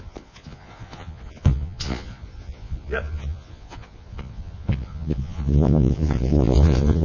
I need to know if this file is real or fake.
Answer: fake